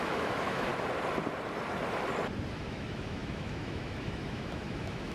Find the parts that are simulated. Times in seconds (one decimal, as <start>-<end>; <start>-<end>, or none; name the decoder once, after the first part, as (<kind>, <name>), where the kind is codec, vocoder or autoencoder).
0.0-0.7 (autoencoder, DAC-VAE); 2.5-5.1